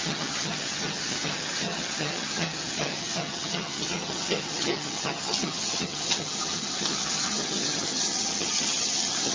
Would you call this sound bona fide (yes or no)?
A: no